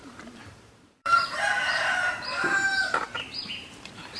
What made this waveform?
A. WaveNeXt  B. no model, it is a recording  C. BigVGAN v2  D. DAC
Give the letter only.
C